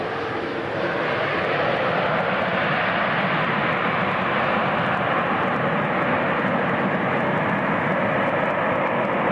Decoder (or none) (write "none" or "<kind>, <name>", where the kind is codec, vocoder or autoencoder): none